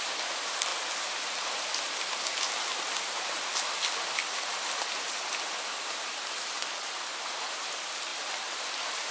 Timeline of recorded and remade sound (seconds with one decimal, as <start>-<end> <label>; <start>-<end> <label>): 0.0-8.1 recorded; 8.1-8.6 remade; 8.6-9.1 recorded